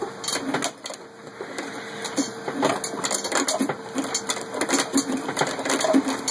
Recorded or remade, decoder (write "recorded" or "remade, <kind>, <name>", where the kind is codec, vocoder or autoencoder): recorded